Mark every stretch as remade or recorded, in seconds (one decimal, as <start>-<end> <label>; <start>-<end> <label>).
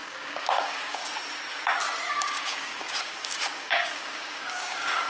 0.0-1.0 remade; 1.0-2.1 recorded; 2.1-5.1 remade